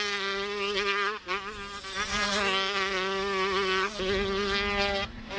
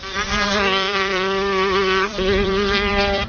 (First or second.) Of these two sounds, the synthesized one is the second